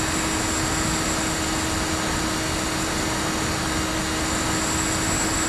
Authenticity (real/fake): real